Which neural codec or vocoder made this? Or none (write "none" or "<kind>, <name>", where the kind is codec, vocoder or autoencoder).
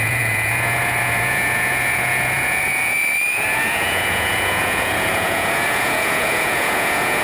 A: vocoder, Vocos